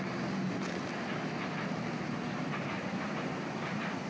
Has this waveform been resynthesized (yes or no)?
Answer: no